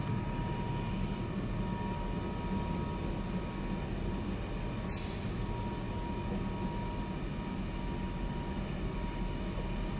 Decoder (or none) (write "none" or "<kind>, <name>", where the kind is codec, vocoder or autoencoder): none